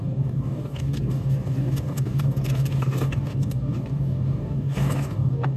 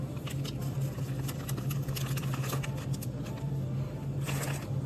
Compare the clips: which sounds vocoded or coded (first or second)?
first